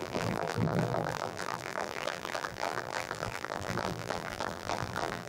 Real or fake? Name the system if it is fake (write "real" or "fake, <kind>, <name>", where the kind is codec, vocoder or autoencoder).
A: fake, vocoder, BigVGAN v2